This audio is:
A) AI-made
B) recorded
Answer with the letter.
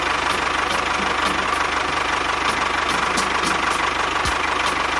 B